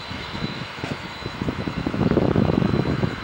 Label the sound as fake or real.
fake